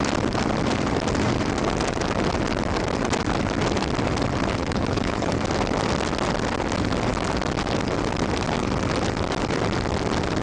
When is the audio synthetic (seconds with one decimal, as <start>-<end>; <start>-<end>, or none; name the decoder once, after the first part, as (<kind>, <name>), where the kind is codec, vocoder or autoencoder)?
4.6-5.3 (codec, HILCodec)